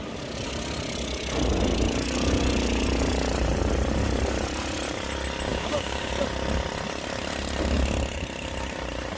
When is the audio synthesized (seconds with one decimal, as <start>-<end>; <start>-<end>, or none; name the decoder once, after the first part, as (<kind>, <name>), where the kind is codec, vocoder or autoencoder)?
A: 5.5-6.1 (codec, DAC)